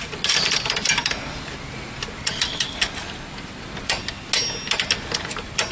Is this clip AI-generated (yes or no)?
no